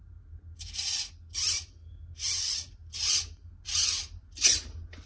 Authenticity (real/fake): real